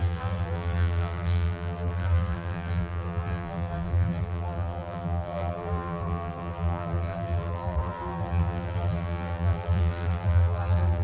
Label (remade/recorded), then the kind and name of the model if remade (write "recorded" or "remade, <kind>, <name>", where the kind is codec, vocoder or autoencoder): remade, vocoder, BigVGAN v2